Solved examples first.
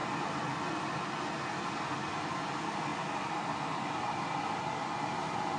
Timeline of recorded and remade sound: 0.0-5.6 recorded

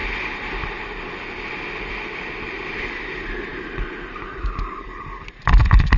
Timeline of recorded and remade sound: 0.0-6.0 recorded

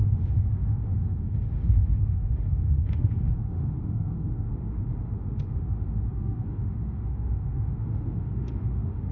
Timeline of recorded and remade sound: 0.0-9.1 remade

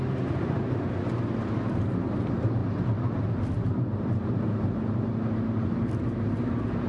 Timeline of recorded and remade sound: 0.0-6.9 recorded

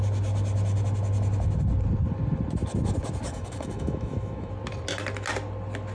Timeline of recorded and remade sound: 0.0-3.3 recorded; 3.3-4.5 remade; 4.5-5.9 recorded

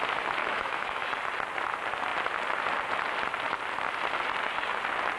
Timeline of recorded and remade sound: 0.0-0.4 recorded; 0.4-1.1 remade; 1.1-5.2 recorded

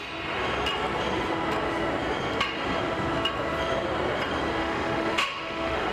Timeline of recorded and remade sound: 0.0-4.6 recorded; 4.6-5.9 remade